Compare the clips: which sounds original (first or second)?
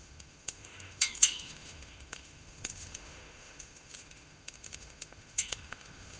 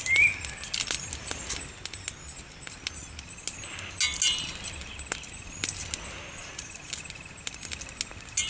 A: second